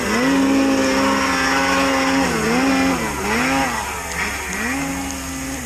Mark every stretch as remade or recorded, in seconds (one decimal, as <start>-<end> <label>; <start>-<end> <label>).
0.0-5.7 recorded